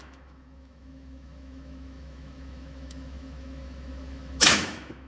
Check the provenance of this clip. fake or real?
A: fake